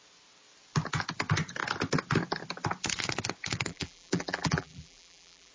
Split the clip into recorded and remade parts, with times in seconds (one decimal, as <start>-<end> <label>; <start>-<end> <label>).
0.0-3.7 recorded; 3.7-5.5 remade